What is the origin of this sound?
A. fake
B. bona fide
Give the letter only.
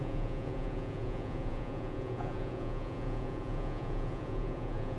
A